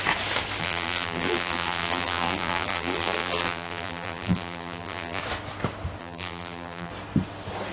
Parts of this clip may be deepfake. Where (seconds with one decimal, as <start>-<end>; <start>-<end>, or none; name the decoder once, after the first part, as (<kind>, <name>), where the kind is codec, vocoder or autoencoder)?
0.6-5.2 (vocoder, BigVGAN v2); 6.0-6.9